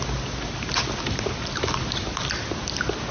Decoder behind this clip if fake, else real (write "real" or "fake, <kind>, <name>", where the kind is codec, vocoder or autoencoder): real